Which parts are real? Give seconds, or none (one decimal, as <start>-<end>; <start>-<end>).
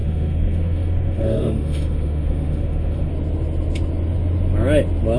3.1-5.2